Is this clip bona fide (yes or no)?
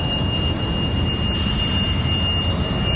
yes